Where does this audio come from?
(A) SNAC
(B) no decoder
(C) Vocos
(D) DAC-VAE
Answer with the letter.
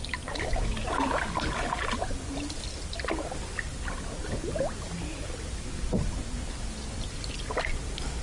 B